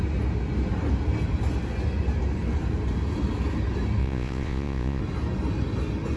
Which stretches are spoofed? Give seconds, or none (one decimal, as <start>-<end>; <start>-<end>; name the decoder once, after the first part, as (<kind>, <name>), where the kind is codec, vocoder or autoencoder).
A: 4.0-5.0 (vocoder, Vocos)